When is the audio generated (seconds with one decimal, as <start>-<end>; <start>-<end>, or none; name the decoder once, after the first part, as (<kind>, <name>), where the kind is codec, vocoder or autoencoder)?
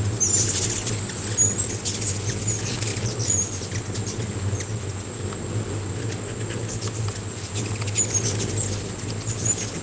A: none